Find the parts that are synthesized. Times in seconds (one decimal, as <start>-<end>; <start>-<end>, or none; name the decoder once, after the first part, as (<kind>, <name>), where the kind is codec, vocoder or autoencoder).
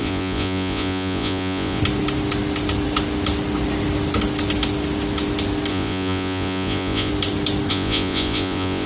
0.0-1.8 (vocoder, Vocos); 5.7-7.1; 7.7-8.9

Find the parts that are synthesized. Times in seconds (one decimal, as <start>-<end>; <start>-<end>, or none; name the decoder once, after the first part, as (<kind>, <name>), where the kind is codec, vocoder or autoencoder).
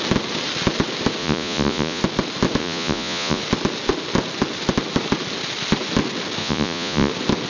1.2-2.0 (vocoder, Vocos); 2.6-3.4; 6.4-7.1